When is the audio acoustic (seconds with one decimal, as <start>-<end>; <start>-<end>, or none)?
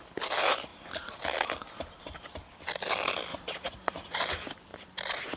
0.0-3.3; 4.2-5.4